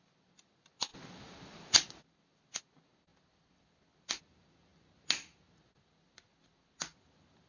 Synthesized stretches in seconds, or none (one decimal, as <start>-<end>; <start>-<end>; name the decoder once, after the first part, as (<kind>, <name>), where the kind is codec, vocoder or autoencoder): none